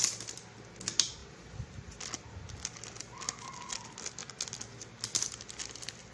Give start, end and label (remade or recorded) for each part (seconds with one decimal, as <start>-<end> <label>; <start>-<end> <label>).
0.0-6.1 recorded

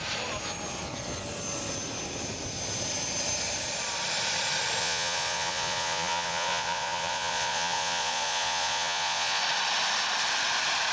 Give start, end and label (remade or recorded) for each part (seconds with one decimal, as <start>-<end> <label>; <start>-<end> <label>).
0.0-4.8 recorded; 4.8-9.4 remade; 9.4-10.9 recorded

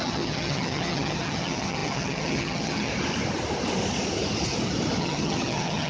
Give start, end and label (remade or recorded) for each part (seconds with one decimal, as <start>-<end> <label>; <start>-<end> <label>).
0.0-2.9 remade; 2.9-5.0 recorded; 5.0-5.9 remade

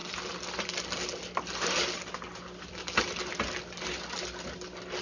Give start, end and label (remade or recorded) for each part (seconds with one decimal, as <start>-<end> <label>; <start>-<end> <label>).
0.0-5.0 recorded